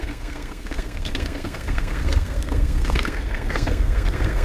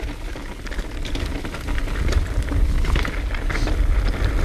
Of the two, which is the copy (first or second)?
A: first